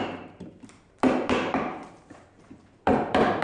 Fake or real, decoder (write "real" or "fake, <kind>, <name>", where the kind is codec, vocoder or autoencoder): fake, vocoder, BigVGAN v2